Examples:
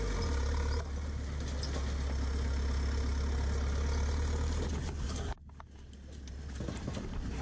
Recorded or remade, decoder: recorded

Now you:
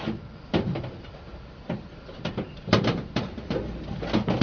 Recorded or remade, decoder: remade, vocoder, BigVGAN v2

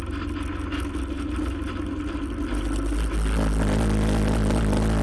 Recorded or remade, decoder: recorded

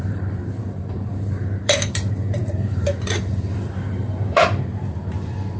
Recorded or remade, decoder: remade, vocoder, BigVGAN v2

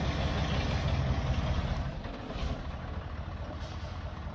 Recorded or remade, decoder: recorded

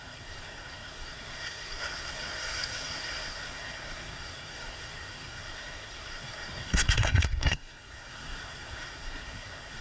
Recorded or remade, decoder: remade, codec, SNAC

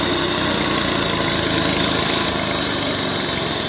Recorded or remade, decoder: remade, vocoder, BigVGAN v2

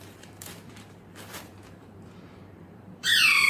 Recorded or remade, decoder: remade, vocoder, BigVGAN v2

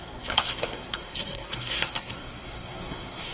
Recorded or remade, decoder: remade, codec, SNAC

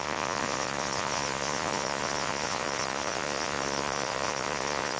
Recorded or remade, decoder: remade, vocoder, Vocos